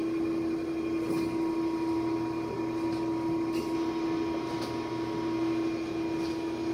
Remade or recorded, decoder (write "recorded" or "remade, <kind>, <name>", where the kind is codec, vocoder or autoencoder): recorded